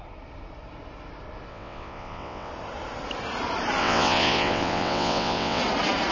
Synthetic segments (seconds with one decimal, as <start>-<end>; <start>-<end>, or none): 1.5-2.5; 3.8-5.6